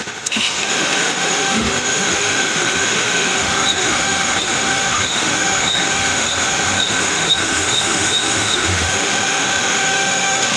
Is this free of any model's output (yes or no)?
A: no